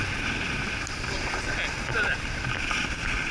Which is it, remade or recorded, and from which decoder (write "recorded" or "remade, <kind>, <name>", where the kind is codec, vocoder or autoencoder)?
recorded